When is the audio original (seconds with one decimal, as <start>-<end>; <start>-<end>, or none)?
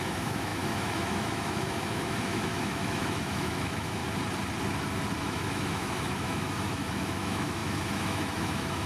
4.0-5.2